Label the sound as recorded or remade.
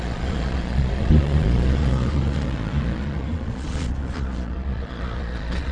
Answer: remade